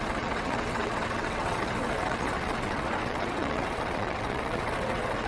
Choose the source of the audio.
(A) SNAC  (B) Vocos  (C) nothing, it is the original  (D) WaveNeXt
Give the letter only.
D